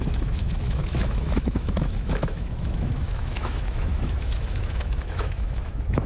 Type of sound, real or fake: fake